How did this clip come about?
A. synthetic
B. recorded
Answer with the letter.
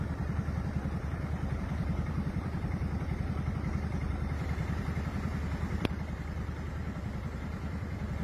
A